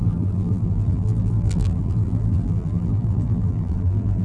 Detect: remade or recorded remade